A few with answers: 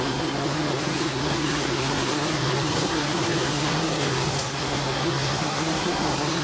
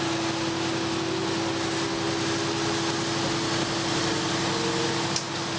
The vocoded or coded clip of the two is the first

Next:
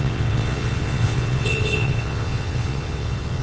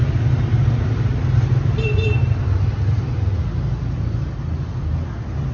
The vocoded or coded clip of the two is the first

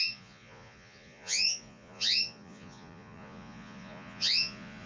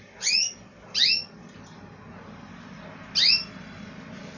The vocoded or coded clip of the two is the first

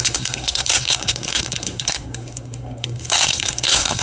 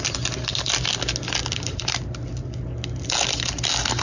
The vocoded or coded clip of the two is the first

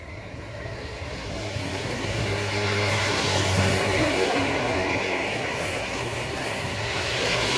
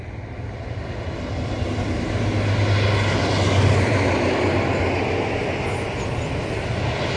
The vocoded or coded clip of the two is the first